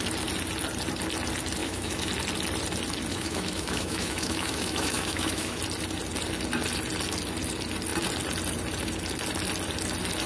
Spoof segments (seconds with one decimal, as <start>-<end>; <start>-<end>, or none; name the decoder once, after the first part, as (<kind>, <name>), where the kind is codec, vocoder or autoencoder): 1.6-2.1 (autoencoder, DAC-VAE); 3.1-5.6